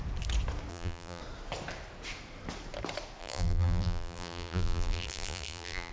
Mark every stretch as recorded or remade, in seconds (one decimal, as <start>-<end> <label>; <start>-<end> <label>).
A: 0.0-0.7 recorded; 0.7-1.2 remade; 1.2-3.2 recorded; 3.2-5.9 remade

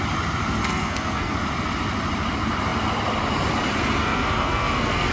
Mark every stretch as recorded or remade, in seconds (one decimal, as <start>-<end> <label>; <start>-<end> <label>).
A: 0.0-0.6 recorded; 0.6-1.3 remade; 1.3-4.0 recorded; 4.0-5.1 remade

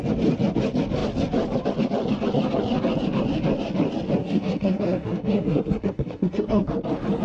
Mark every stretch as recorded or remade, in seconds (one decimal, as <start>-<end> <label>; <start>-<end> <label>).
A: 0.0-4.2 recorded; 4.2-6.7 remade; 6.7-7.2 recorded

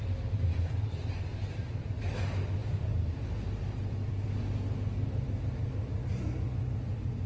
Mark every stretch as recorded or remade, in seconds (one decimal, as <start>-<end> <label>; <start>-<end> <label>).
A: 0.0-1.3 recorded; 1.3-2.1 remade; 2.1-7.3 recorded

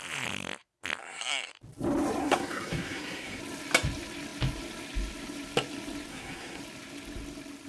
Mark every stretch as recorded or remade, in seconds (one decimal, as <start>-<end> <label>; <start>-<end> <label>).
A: 0.0-1.0 recorded; 1.0-1.5 remade; 1.5-2.2 recorded; 2.2-3.4 remade; 3.4-6.1 recorded; 6.1-6.6 remade; 6.6-7.7 recorded

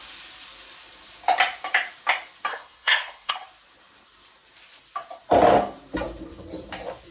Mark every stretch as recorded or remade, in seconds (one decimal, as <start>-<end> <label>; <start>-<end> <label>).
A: 0.0-2.5 recorded; 2.5-3.3 remade; 3.3-7.1 recorded